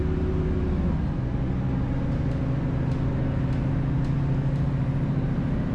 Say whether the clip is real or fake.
real